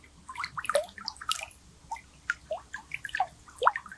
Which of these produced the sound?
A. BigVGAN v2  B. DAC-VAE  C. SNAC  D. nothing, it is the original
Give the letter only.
A